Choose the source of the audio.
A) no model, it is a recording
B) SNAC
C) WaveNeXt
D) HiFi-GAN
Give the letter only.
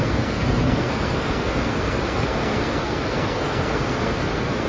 B